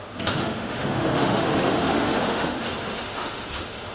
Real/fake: fake